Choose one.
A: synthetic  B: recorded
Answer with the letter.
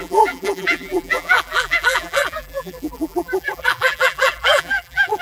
A